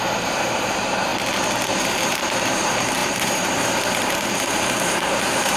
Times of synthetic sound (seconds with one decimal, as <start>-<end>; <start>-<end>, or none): 0.0-1.1; 1.8-5.6